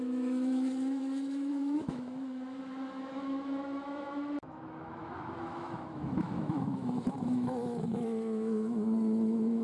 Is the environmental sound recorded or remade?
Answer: remade